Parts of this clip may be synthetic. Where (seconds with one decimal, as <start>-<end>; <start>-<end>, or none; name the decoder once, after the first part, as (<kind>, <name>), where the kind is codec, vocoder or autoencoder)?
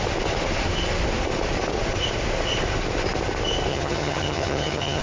3.7-5.0 (vocoder, HiFi-GAN)